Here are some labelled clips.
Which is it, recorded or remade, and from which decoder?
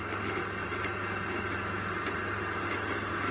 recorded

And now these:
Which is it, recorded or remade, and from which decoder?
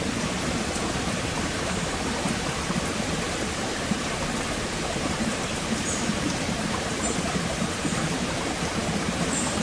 remade, vocoder, BigVGAN v2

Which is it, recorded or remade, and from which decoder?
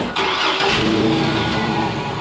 remade, vocoder, BigVGAN v2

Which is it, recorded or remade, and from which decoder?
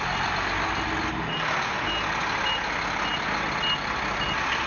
recorded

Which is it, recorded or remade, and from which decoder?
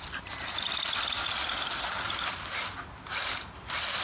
recorded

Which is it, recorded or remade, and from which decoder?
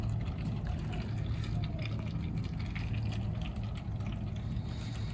recorded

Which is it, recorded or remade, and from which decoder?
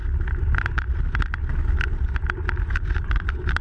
recorded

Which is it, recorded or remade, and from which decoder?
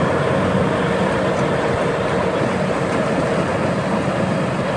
recorded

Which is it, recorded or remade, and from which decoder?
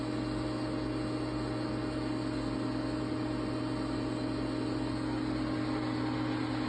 recorded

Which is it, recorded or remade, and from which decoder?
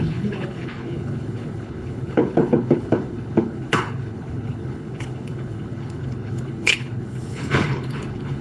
remade, codec, HILCodec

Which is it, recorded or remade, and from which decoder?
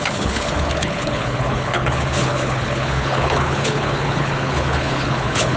remade, codec, HILCodec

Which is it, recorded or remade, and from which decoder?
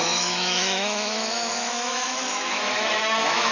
remade, autoencoder, DAC-VAE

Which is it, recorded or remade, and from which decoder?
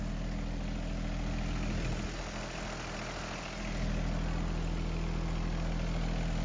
recorded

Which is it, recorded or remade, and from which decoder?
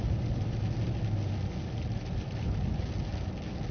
recorded